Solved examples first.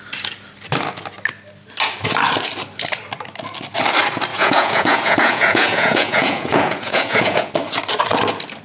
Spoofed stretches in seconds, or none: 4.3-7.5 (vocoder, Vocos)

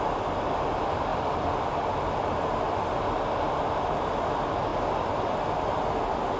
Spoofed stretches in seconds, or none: none

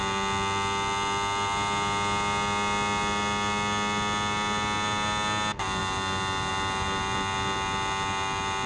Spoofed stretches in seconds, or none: none

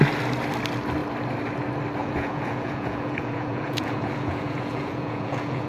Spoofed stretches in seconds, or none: 2.0-5.7 (vocoder, Vocos)

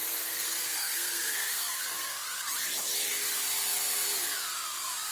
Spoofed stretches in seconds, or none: 0.0-2.2 (codec, SNAC)

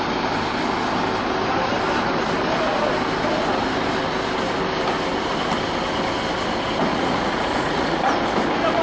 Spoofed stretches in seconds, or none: 6.9-8.0 (vocoder, Vocos)